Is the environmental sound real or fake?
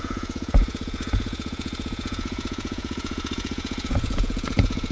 fake